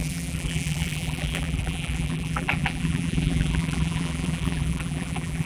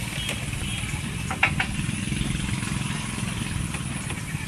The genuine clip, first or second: second